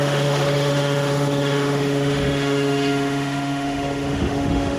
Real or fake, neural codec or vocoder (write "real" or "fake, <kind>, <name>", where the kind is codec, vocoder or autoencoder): fake, autoencoder, DAC-VAE